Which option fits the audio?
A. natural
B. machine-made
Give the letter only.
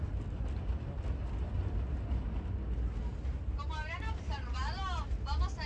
A